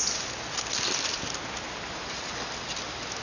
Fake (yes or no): no